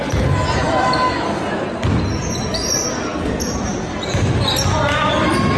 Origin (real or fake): real